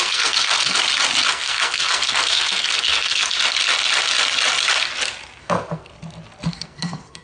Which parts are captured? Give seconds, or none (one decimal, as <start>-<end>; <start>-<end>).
0.8-1.3; 3.3-5.4; 5.9-6.5